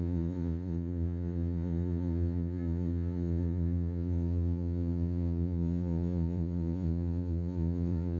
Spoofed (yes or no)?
yes